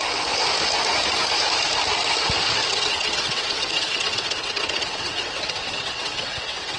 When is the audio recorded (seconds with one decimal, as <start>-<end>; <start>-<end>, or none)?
0.0-2.7